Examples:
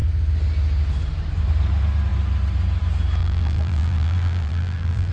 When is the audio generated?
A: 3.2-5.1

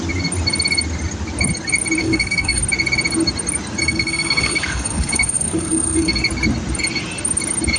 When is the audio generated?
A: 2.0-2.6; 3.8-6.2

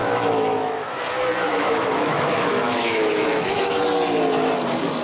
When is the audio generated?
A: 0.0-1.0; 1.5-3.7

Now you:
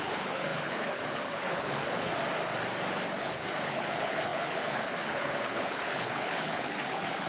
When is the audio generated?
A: 0.0-2.1; 3.2-7.3

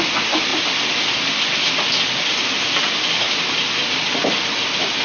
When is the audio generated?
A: none

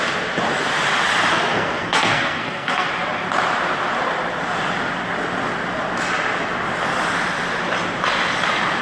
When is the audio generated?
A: 1.3-2.9

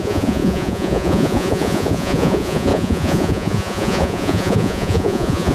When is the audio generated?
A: 0.0-5.5